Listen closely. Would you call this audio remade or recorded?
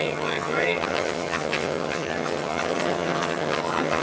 remade